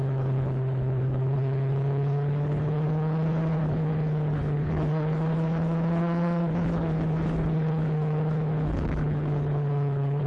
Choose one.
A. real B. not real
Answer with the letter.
B